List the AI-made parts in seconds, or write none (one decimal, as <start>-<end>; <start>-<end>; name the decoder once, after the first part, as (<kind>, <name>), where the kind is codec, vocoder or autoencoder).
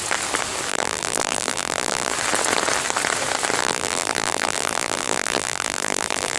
0.7-2.1 (vocoder, BigVGAN v2); 3.6-6.4